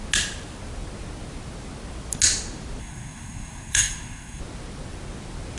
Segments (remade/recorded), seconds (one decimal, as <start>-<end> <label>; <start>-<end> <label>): 0.0-2.8 recorded; 2.8-4.4 remade; 4.4-5.6 recorded